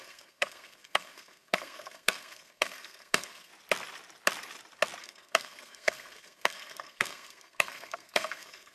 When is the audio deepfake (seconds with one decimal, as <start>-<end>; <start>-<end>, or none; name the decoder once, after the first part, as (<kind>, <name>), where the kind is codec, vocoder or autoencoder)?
0.0-3.5 (codec, SNAC); 5.0-8.7